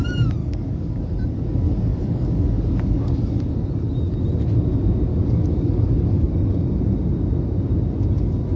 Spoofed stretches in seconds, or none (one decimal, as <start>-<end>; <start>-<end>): 0.4-1.0; 1.9-3.2; 5.1-6.3